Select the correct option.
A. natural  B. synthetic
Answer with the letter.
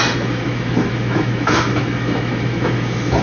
B